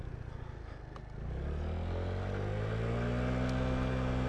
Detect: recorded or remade recorded